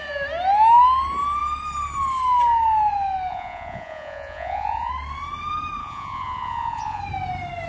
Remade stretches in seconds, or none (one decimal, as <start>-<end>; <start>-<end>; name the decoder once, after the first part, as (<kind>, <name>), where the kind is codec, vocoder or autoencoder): 3.3-4.9 (vocoder, Vocos); 5.8-7.0